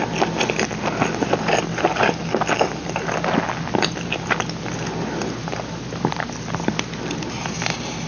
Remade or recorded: recorded